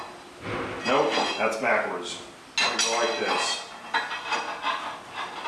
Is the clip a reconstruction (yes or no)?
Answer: no